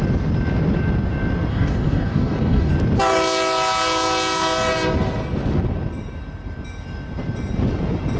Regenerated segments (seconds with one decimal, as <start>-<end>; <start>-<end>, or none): 1.5-2.7